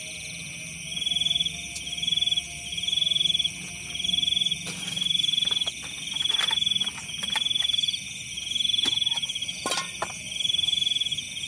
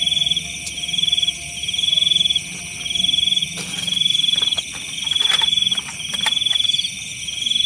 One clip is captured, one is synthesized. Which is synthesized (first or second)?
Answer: second